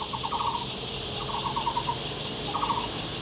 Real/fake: real